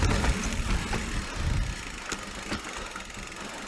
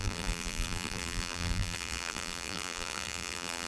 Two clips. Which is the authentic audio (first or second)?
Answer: first